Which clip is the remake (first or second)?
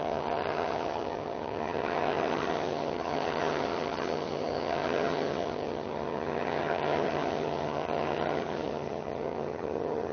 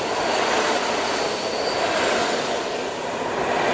first